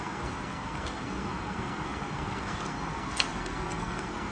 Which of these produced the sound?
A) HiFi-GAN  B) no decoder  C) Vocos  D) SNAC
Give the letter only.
D